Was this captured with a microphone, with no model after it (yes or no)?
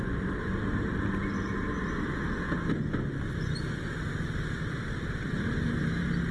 yes